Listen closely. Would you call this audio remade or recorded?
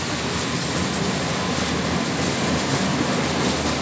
recorded